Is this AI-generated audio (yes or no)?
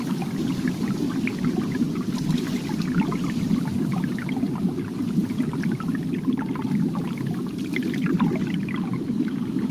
no